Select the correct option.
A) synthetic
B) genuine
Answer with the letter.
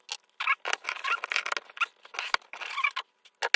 B